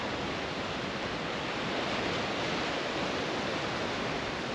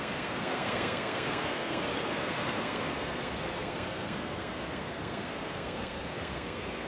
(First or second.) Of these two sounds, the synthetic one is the second